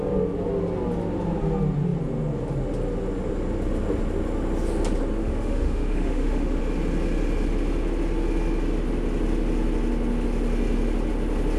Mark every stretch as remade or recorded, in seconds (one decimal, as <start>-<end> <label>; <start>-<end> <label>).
0.0-5.2 recorded; 5.2-6.6 remade; 6.6-11.6 recorded